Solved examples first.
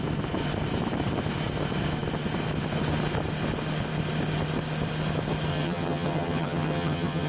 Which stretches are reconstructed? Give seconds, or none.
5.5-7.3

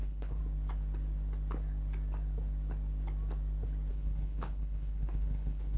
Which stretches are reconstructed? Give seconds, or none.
0.0-0.4; 3.9-5.8